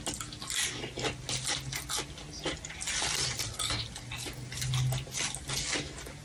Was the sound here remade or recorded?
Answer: recorded